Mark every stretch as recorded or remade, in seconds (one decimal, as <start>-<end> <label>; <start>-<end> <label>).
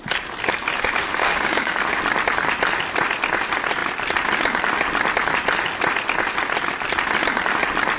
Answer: 0.0-1.0 recorded; 1.0-2.0 remade; 2.0-8.0 recorded